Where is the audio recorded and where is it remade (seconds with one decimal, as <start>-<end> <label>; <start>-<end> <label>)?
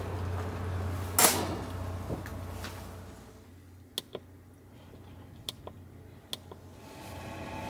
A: 0.0-7.7 recorded